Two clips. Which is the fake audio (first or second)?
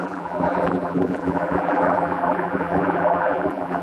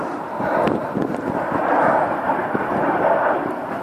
first